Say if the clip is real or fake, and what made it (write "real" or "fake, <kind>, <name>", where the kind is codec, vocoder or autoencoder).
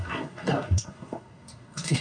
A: fake, codec, SNAC